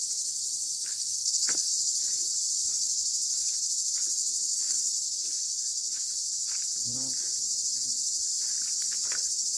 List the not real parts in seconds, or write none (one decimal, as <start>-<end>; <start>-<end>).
0.9-1.7; 4.6-5.2